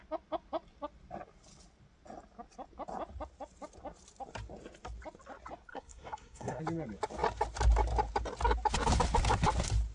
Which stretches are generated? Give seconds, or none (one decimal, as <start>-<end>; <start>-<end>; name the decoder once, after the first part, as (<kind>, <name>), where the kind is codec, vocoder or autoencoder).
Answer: 5.7-6.6 (codec, SNAC)